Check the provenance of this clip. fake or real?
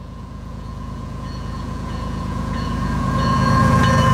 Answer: fake